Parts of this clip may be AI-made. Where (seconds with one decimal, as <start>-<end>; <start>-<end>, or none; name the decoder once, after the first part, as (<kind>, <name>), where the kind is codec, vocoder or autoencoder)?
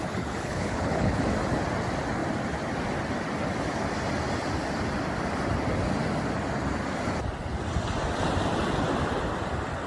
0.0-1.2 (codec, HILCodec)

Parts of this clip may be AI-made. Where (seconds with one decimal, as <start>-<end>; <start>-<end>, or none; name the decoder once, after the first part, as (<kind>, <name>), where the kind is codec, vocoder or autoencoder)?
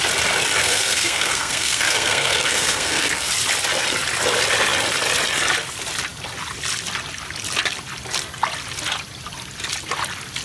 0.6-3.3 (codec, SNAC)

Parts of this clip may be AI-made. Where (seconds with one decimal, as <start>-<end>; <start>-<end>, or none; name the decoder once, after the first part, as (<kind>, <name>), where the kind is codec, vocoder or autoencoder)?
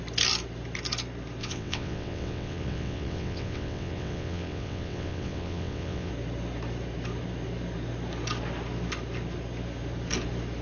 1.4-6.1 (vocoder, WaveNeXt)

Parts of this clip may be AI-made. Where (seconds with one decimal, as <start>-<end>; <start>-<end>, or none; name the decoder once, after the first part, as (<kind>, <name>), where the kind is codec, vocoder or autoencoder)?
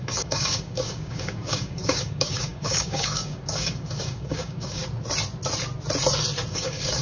0.0-4.8 (codec, DAC); 6.5-7.0